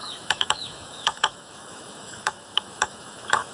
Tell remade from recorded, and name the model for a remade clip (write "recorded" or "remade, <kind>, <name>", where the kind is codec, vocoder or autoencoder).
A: remade, autoencoder, DAC-VAE